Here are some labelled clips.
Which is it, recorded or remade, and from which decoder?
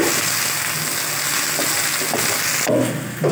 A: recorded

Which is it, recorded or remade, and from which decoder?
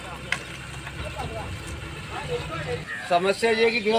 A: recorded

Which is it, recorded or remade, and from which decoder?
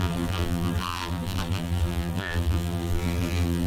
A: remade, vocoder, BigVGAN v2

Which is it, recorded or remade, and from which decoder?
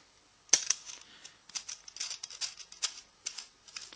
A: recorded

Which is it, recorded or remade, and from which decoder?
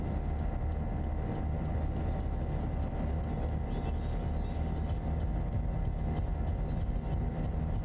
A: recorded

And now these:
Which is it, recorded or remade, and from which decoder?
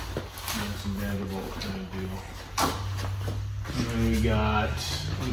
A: recorded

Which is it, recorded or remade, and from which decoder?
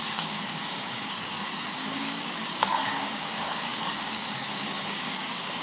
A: remade, codec, DAC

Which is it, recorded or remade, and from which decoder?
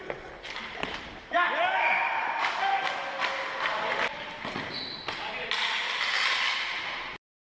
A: recorded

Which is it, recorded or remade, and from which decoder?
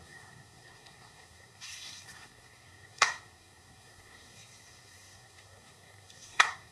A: remade, codec, SNAC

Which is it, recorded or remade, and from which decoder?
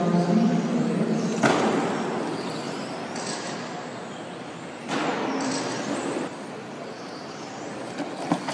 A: recorded